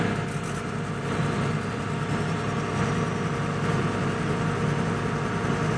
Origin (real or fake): real